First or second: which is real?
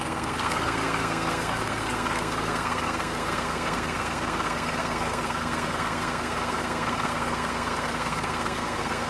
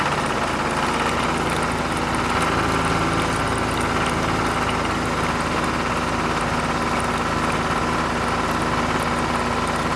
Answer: second